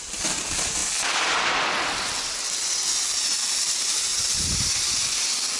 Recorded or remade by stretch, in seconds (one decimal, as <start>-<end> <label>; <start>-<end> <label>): 0.0-5.6 recorded